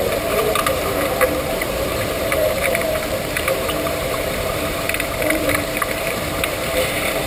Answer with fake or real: fake